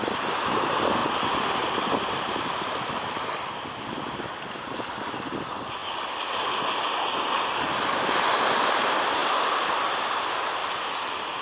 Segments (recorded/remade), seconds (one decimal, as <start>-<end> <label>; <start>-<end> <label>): 0.0-11.4 recorded